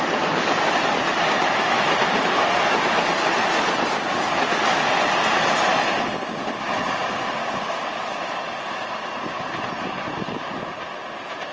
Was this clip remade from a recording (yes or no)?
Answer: no